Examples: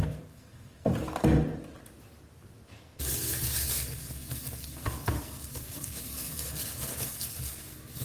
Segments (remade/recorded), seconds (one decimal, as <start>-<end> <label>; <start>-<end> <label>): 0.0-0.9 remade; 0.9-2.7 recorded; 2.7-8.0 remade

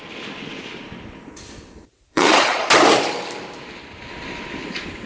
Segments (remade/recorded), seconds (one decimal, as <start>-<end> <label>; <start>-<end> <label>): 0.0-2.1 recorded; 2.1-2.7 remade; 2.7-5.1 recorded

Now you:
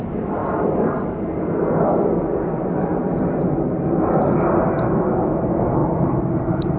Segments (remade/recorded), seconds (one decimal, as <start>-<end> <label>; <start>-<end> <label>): 0.0-0.4 remade; 0.4-3.7 recorded; 3.7-6.8 remade

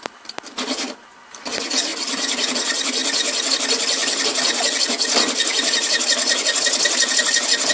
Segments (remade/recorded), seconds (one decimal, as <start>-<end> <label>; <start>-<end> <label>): 0.0-7.7 recorded